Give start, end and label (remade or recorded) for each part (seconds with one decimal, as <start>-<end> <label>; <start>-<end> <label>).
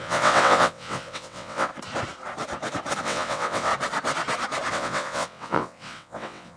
0.0-1.7 remade; 1.7-3.0 recorded; 3.0-3.7 remade; 3.7-4.7 recorded; 4.7-6.6 remade